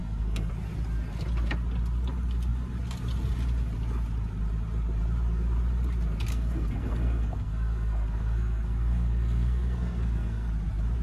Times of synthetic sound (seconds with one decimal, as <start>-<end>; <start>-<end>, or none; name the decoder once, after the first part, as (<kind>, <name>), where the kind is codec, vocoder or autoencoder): 0.0-0.5 (codec, SNAC); 6.3-10.5